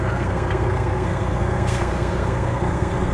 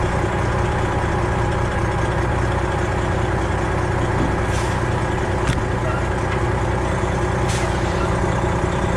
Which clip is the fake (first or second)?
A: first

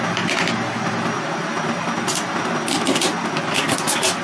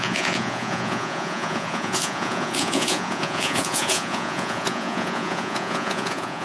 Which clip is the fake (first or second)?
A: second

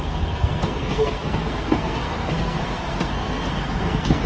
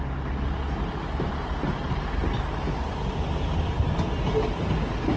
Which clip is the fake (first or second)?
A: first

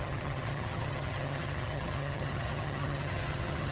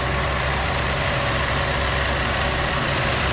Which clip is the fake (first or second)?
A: first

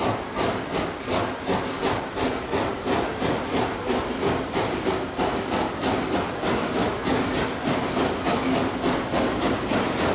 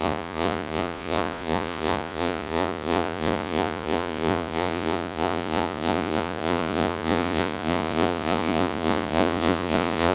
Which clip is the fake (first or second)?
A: second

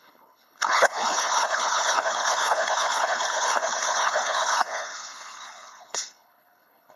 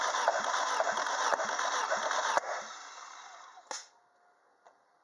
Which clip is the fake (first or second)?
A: first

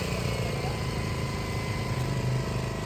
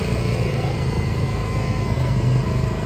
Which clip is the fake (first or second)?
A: second